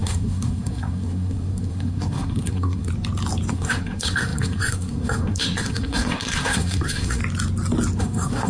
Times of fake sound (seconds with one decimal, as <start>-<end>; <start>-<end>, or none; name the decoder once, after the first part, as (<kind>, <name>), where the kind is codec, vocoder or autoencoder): 0.0-2.9 (codec, SNAC); 3.5-7.2; 8.0-8.5